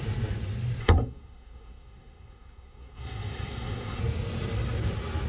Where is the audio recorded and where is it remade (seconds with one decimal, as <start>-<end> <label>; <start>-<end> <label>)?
0.0-0.8 recorded; 0.8-4.0 remade; 4.0-5.3 recorded